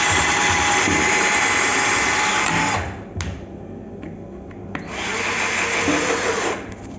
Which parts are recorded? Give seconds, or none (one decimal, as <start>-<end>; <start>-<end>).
0.0-7.0